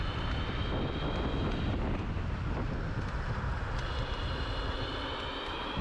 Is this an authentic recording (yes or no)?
yes